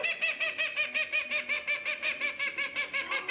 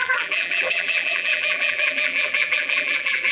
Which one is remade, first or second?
second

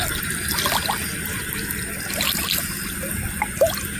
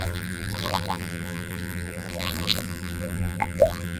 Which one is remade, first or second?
second